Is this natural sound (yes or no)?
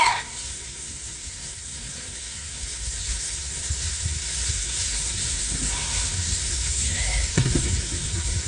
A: no